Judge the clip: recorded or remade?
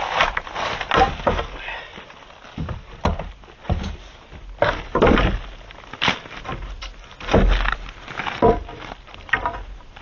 recorded